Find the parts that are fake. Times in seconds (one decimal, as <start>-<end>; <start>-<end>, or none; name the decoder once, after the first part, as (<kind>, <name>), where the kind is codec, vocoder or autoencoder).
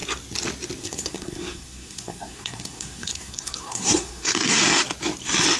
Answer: 0.8-4.6 (codec, SNAC)